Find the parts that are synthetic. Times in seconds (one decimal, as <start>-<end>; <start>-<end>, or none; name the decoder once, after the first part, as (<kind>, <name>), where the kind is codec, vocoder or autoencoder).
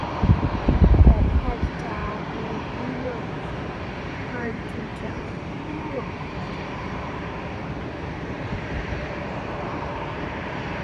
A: 0.0-10.8 (vocoder, BigVGAN v2)